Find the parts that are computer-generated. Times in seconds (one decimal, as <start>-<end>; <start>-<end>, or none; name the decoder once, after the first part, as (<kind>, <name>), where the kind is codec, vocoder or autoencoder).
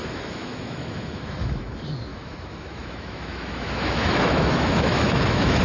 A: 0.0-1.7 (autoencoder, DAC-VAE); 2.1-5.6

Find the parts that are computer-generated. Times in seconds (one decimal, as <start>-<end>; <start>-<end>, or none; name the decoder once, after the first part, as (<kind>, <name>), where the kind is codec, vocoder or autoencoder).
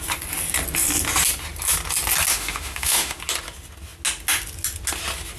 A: 2.3-3.2 (autoencoder, DAC-VAE)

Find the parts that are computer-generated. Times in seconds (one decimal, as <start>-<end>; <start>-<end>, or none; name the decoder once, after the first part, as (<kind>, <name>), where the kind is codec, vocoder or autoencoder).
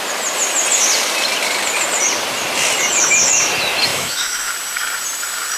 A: 3.9-4.5 (autoencoder, DAC-VAE)